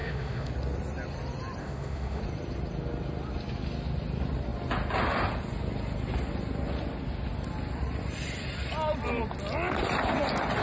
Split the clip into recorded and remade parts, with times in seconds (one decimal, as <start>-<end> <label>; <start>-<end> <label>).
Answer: 0.0-0.5 remade; 0.5-1.6 recorded; 1.6-2.2 remade; 2.2-10.6 recorded

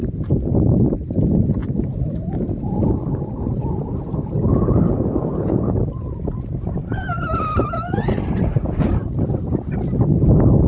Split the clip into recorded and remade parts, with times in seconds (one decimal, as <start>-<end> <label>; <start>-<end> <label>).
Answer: 0.0-10.7 recorded

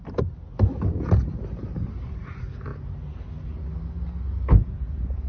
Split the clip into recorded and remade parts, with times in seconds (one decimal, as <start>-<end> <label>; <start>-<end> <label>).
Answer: 0.0-4.6 recorded; 4.6-5.3 remade

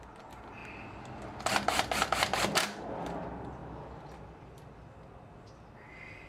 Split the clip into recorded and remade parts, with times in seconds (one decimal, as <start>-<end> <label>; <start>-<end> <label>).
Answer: 0.0-6.3 recorded

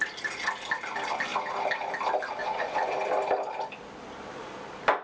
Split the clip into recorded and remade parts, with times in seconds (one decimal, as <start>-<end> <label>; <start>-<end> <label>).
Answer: 0.0-2.4 recorded; 2.4-2.9 remade; 2.9-5.0 recorded

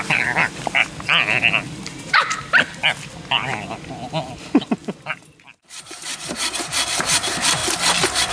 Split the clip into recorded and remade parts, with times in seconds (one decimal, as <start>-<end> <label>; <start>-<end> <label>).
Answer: 0.0-0.8 remade; 0.8-2.1 recorded; 2.1-2.8 remade; 2.8-5.2 recorded; 5.2-7.6 remade; 7.6-8.3 recorded

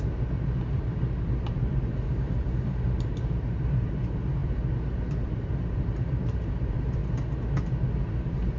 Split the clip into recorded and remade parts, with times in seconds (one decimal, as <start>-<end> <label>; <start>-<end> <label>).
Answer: 0.0-7.0 remade; 7.0-8.0 recorded; 8.0-8.6 remade

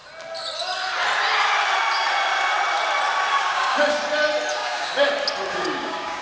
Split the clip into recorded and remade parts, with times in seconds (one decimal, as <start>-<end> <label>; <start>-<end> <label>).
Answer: 0.0-3.3 recorded; 3.3-4.0 remade; 4.0-4.5 recorded; 4.5-4.9 remade; 4.9-5.5 recorded; 5.5-6.2 remade